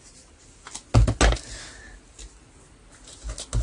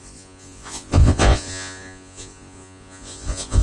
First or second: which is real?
first